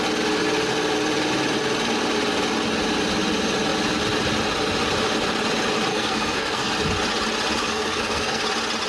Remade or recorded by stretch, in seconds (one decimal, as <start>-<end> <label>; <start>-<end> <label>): 0.0-5.9 recorded; 5.9-6.7 remade; 6.7-7.6 recorded; 7.6-8.4 remade; 8.4-8.9 recorded